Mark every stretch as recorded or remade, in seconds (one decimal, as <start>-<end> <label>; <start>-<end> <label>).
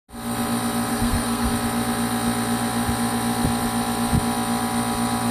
0.0-0.9 recorded; 0.9-1.5 remade; 1.5-5.3 recorded